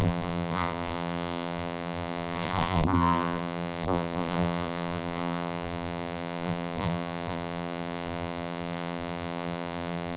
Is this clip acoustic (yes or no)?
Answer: no